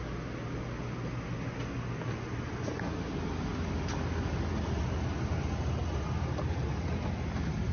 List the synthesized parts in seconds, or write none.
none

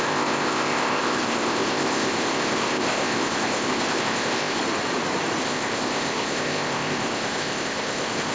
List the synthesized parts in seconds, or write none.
0.0-4.6 (codec, ZipCodec); 5.4-8.3

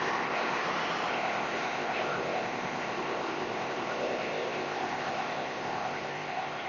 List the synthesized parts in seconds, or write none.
0.0-0.6 (codec, ZipCodec); 1.1-6.7

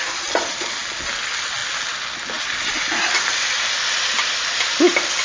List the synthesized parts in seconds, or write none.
none

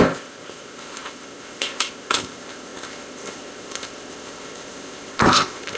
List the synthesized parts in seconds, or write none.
0.0-5.8 (codec, ZipCodec)

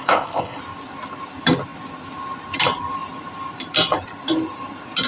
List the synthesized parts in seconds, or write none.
0.0-0.6 (codec, ZipCodec)

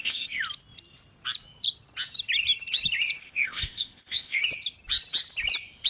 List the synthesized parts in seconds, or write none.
0.0-0.4 (codec, ZipCodec); 3.2-4.4